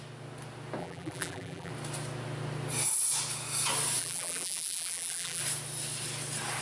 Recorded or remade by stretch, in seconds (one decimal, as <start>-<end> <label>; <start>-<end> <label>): 0.0-0.8 recorded; 0.8-1.7 remade; 1.7-4.0 recorded; 4.0-5.4 remade; 5.4-6.6 recorded